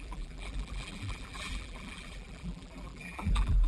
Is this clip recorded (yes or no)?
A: no